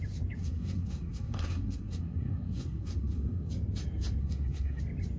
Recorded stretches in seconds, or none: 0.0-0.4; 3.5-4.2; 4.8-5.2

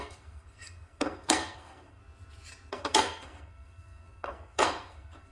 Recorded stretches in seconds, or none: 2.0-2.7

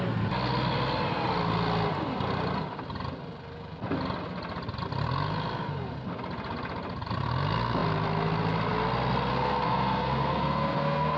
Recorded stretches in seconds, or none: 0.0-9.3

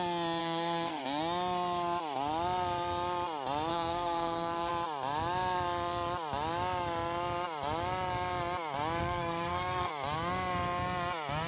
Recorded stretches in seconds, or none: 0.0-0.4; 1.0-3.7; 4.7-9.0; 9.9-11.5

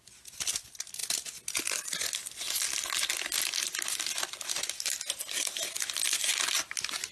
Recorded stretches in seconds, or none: 0.0-7.1